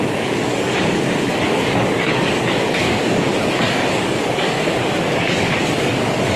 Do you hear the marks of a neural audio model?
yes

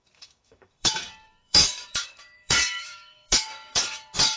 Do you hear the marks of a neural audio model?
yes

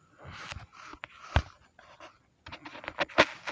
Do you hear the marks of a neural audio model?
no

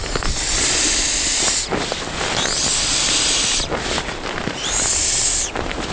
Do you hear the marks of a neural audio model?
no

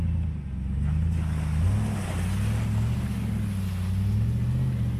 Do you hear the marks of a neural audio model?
no